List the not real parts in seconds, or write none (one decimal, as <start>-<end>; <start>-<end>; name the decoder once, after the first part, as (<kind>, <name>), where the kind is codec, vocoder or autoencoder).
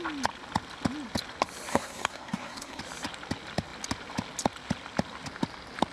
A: 1.7-2.8 (codec, SNAC)